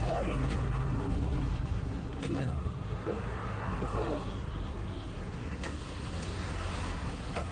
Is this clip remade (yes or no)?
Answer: yes